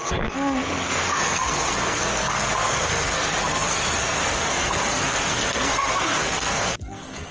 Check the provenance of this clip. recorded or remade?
remade